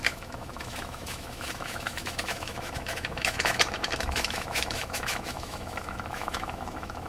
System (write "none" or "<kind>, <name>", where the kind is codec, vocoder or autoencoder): autoencoder, DAC-VAE